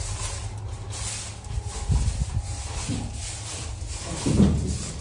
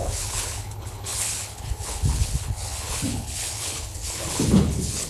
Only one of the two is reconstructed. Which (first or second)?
second